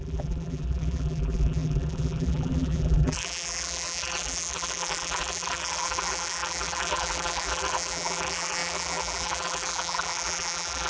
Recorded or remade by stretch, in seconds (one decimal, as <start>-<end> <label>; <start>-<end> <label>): 0.0-10.9 remade